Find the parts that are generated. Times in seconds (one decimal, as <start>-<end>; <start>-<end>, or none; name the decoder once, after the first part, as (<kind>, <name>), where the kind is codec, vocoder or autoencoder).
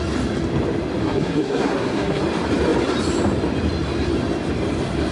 1.0-2.2 (codec, SNAC)